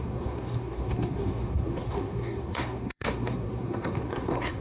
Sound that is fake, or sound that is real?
fake